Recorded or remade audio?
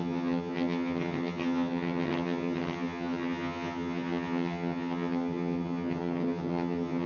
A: remade